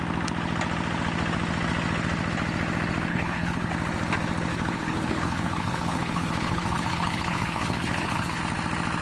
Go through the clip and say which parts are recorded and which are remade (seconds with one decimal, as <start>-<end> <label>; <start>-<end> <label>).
0.0-3.1 recorded; 3.1-3.7 remade; 3.7-4.5 recorded; 4.5-8.4 remade; 8.4-9.0 recorded